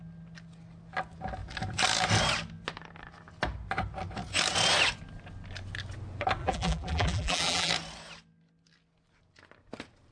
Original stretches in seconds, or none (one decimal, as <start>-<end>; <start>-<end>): 0.0-6.4; 7.7-10.1